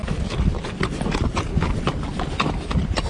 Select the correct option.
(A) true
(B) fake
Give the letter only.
A